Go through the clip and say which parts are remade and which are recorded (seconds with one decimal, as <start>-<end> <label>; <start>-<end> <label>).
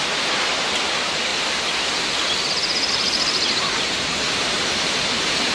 0.0-1.3 remade; 1.3-2.9 recorded; 2.9-5.5 remade